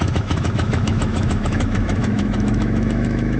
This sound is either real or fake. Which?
fake